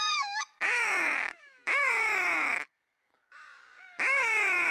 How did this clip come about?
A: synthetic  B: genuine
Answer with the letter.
A